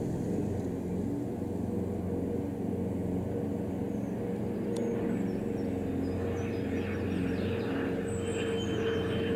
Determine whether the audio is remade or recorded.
recorded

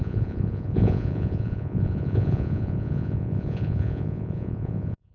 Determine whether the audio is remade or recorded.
remade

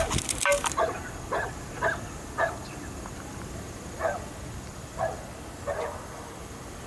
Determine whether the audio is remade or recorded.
recorded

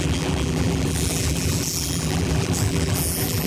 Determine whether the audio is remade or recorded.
remade